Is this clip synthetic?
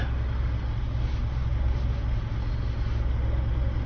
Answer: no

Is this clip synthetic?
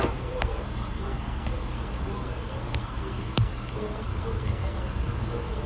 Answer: yes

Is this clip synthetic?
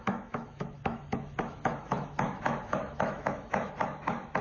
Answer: yes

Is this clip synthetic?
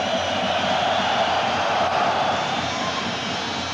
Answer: no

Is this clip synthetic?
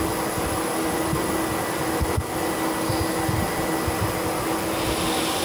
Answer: no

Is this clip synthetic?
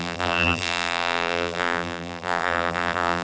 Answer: yes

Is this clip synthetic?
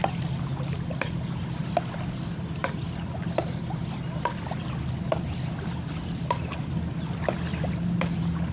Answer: no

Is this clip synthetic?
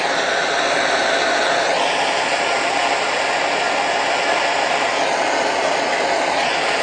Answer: no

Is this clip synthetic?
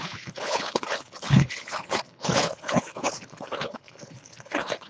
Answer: yes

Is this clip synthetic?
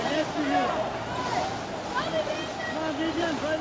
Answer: no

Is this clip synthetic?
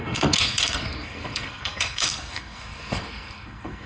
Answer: yes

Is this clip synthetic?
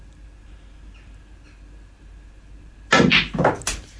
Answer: no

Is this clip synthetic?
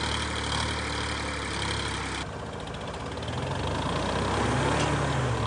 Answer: no